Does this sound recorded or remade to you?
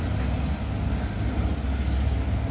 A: recorded